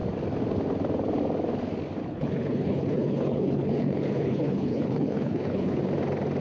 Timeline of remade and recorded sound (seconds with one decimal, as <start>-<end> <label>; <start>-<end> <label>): 0.0-2.0 recorded; 2.0-5.8 remade; 5.8-6.4 recorded